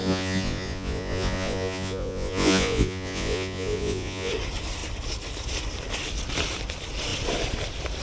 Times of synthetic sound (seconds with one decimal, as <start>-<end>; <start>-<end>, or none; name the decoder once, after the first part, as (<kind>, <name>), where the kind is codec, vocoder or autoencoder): 0.0-4.3 (vocoder, Vocos)